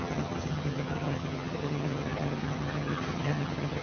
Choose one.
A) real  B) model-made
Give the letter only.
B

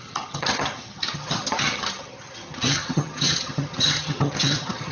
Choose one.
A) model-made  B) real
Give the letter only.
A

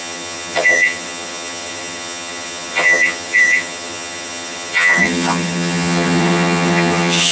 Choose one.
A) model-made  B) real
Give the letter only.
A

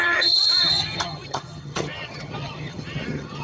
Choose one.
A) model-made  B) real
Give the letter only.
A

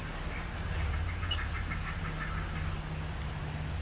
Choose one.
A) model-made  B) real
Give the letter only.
B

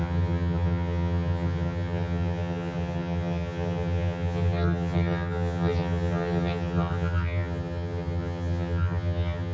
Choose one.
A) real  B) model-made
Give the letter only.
B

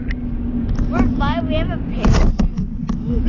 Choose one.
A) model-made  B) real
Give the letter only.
B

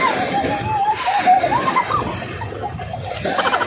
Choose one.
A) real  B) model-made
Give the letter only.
A